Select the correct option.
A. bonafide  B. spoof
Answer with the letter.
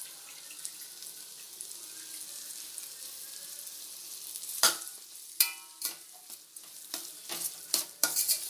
A